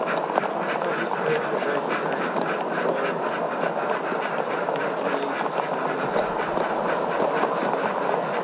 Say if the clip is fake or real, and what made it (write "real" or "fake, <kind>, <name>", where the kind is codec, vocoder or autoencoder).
real